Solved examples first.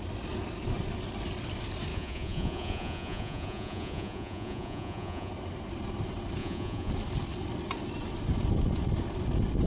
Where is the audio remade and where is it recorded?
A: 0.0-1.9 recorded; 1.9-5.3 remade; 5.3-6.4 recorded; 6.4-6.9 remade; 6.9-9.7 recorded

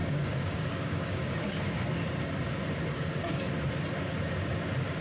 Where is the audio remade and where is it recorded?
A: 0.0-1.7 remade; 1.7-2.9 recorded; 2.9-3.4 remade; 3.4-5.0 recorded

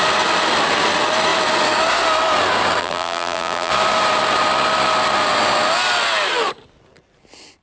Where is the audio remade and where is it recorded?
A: 0.0-2.8 recorded; 2.8-3.7 remade; 3.7-7.6 recorded

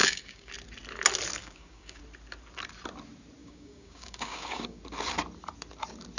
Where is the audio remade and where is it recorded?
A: 0.0-0.5 remade; 0.5-1.4 recorded; 1.4-2.0 remade; 2.0-3.4 recorded; 3.4-4.8 remade; 4.8-6.2 recorded

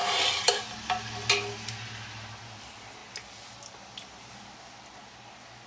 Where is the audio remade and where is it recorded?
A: 0.0-0.6 remade; 0.6-5.7 recorded